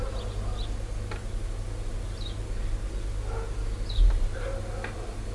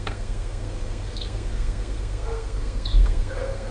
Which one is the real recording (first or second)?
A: first